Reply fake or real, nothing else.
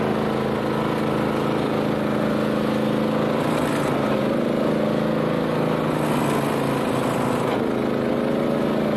real